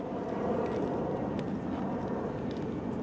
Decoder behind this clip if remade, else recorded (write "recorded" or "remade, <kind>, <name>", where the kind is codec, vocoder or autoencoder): recorded